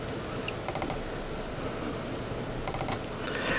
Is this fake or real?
real